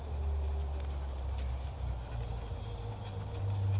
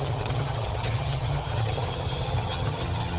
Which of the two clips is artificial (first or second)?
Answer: second